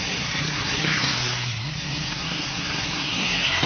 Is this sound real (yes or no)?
no